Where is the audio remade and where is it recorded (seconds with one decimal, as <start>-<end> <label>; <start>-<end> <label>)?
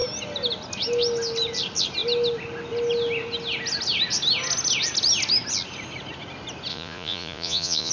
0.0-6.7 recorded; 6.7-7.9 remade